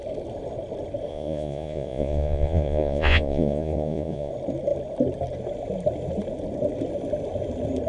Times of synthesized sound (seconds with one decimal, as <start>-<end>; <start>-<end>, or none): 1.1-4.3